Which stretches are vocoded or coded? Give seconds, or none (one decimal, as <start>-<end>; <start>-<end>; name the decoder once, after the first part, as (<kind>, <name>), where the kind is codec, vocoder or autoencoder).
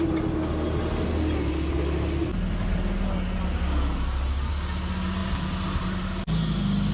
none